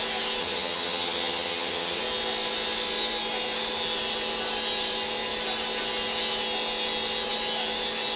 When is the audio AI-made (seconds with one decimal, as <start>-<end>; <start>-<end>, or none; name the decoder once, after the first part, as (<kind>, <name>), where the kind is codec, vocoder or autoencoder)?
0.4-2.0 (vocoder, HiFi-GAN)